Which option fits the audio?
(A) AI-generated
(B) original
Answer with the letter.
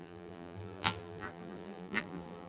A